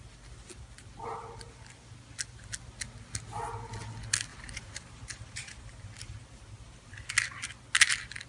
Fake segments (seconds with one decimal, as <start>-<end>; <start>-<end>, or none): 4.3-7.1